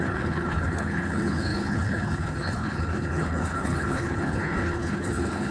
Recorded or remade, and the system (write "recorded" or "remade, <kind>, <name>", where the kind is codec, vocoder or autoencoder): remade, codec, HILCodec